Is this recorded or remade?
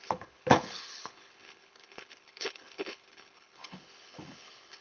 remade